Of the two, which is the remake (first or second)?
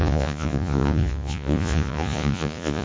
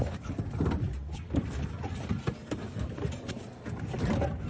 first